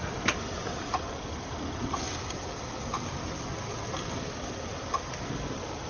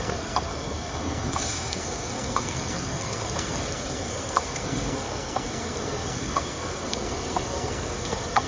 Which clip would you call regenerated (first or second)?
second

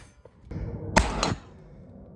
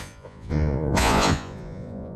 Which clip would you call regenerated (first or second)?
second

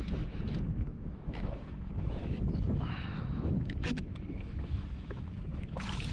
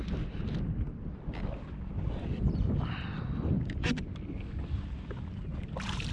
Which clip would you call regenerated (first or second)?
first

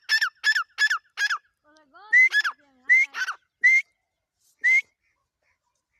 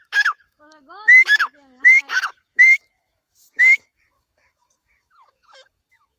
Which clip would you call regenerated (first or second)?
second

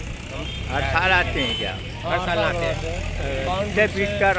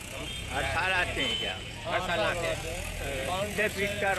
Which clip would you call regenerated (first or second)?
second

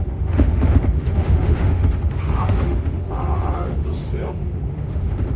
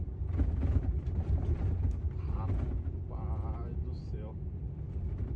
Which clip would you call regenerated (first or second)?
first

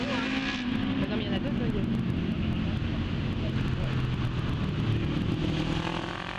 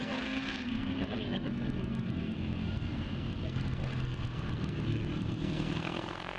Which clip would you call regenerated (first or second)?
second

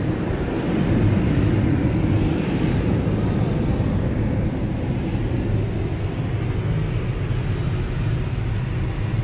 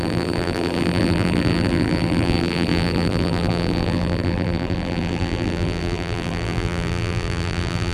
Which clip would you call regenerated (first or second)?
second